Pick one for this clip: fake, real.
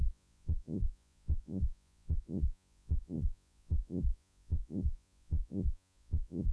fake